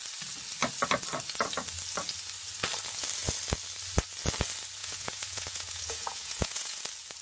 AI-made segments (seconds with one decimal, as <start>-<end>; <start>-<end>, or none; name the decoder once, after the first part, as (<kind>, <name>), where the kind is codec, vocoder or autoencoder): 4.8-6.8 (vocoder, Vocos)